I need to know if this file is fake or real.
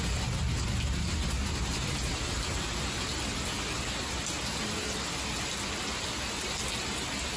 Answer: real